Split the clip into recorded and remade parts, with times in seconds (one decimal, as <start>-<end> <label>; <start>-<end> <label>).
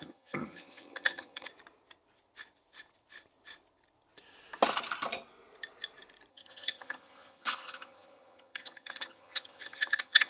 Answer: 0.0-1.5 remade; 1.5-6.3 recorded; 6.3-10.3 remade